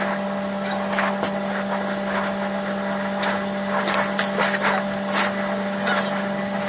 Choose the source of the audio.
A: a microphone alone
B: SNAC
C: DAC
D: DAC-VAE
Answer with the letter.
A